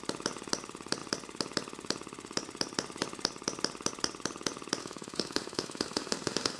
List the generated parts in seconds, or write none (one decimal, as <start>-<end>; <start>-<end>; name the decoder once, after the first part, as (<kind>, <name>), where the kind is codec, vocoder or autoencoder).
4.8-6.6 (autoencoder, DAC-VAE)